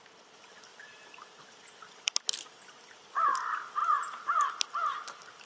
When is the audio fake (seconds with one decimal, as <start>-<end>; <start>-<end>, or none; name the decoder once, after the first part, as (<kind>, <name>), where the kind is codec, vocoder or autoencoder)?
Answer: 0.7-2.5 (vocoder, BigVGAN v2); 3.8-4.5